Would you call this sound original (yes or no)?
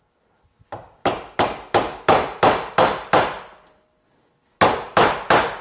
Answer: yes